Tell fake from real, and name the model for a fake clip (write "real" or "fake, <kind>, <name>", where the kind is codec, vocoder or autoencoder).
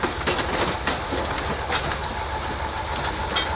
real